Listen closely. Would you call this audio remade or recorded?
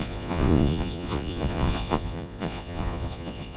remade